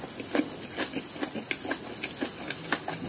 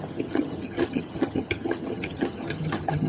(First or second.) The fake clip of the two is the second